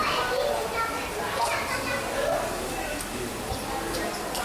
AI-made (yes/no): no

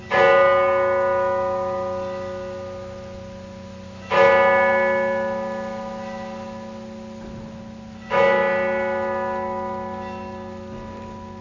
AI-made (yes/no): no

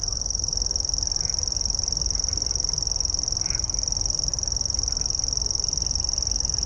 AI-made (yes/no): no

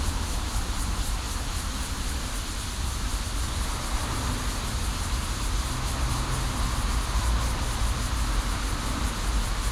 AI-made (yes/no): no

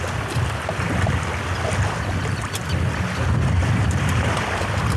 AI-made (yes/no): no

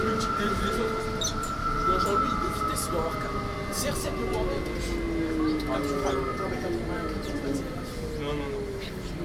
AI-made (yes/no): no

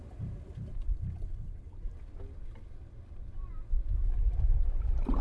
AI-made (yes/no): no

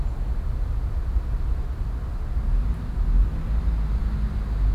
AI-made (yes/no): no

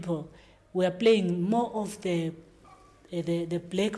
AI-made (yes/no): no